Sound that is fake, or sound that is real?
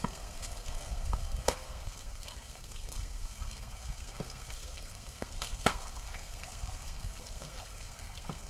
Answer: fake